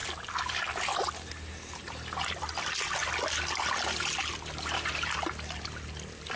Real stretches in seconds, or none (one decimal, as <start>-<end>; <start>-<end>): 0.0-6.4